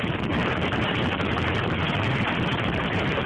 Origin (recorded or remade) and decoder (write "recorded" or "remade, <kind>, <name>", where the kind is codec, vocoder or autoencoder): remade, vocoder, BigVGAN v2